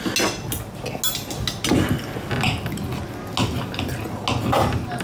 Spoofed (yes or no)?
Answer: no